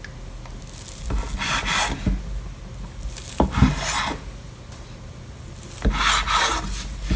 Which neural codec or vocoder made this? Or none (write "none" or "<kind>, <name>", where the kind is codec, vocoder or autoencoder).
none